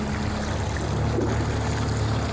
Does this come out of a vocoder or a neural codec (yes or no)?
no